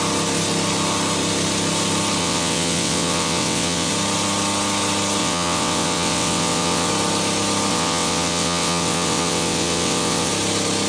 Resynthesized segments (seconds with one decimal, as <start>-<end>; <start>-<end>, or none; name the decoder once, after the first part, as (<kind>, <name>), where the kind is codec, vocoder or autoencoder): 2.2-3.9 (vocoder, WaveNeXt); 5.2-6.9; 7.7-10.3